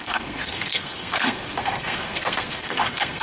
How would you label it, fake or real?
fake